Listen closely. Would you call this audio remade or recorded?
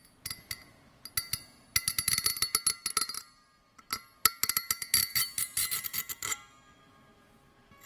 recorded